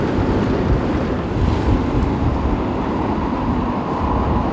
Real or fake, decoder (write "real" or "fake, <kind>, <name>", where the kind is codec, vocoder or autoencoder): real